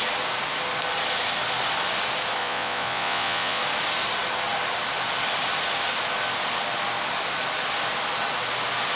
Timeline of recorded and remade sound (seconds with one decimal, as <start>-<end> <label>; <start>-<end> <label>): 0.0-2.4 recorded; 2.4-3.6 remade; 3.6-9.0 recorded